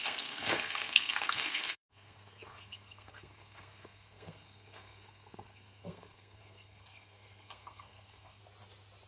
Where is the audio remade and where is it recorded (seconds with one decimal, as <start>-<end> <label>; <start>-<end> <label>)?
0.0-8.4 remade; 8.4-9.1 recorded